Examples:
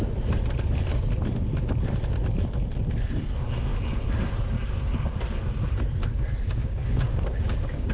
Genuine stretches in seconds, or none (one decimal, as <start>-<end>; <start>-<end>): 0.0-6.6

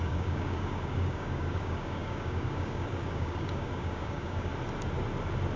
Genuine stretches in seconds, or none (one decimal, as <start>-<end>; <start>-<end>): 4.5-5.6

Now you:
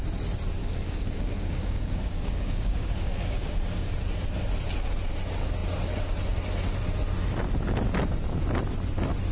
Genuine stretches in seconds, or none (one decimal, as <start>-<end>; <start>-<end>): 0.0-0.6; 3.9-9.3

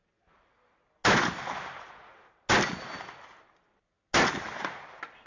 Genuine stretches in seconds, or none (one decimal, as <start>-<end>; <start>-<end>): 0.0-5.3